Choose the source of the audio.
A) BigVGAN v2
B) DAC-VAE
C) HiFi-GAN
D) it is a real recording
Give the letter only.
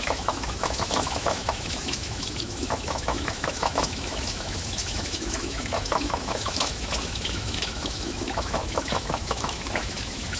B